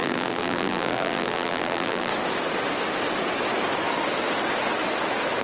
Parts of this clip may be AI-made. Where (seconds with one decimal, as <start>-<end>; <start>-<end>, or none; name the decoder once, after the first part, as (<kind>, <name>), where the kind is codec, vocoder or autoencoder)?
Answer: 0.0-2.1 (vocoder, BigVGAN v2)